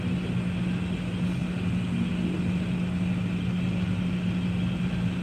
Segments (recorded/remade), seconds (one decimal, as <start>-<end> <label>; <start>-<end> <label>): 0.0-5.2 recorded